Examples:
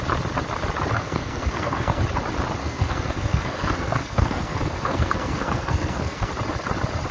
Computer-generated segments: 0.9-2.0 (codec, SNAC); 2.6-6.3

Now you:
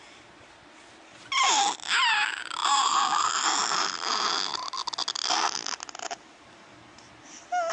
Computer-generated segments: none

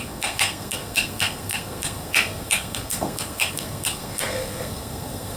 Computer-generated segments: 0.0-5.4 (codec, SNAC)

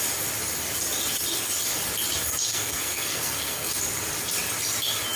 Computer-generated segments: 2.5-3.7 (codec, SNAC)

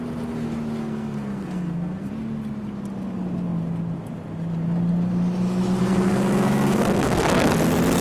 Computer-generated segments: 0.8-2.1 (codec, SNAC); 5.8-7.5

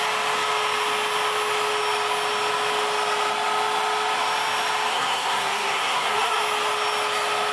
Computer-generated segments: 4.9-6.4 (codec, SNAC)

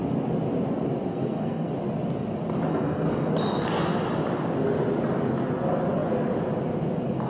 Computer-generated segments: 1.1-1.7 (codec, SNAC); 2.7-3.3